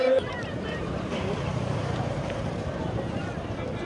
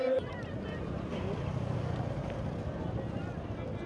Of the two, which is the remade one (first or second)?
first